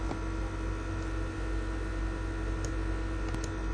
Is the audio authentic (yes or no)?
yes